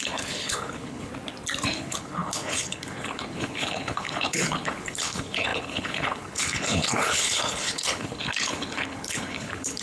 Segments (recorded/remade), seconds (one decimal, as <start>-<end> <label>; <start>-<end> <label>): 0.0-1.1 remade; 1.1-1.7 recorded; 1.7-9.8 remade